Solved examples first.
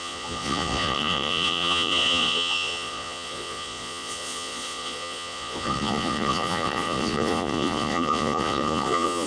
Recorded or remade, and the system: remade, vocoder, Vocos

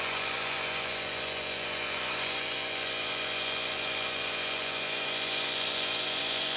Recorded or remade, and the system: remade, vocoder, Vocos